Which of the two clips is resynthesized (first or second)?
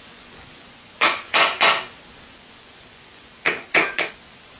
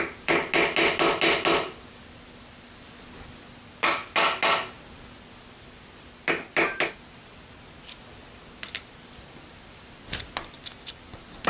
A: first